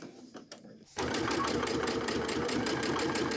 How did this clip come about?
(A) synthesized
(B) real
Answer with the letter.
A